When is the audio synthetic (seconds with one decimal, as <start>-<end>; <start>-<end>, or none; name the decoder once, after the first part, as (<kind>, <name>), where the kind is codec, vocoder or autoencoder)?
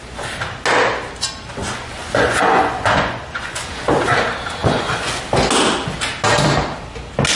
1.6-3.8 (vocoder, Vocos); 4.6-5.2